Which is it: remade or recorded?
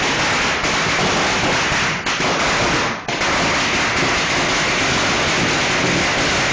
recorded